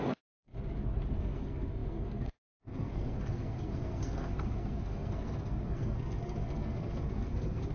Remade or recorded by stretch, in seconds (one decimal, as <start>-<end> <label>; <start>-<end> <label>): 0.0-0.5 remade; 0.5-1.2 recorded; 1.2-7.7 remade